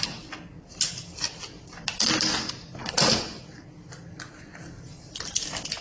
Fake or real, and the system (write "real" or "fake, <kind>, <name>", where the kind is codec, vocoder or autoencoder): real